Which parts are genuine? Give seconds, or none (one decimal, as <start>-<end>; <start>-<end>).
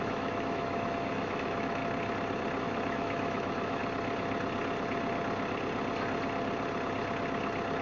1.8-2.6; 3.8-7.8